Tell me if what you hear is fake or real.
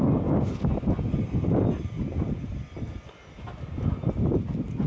real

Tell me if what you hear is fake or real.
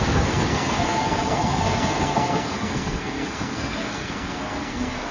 fake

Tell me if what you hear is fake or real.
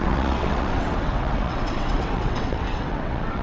fake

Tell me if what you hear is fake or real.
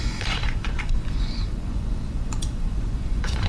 fake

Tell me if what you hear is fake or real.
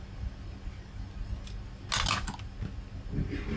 real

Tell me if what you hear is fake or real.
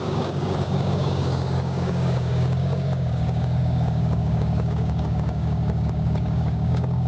fake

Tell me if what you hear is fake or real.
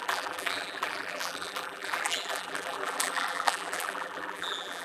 fake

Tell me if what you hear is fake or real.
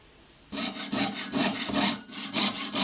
real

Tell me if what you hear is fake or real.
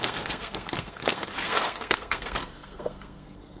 fake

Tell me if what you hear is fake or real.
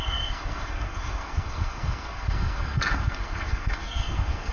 fake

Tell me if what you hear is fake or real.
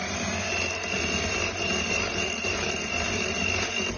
real